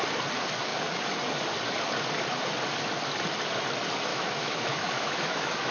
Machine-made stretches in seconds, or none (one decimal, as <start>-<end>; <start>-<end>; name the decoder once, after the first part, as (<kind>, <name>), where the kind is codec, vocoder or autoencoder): 4.1-5.7 (autoencoder, DAC-VAE)